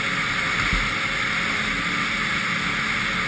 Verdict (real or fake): real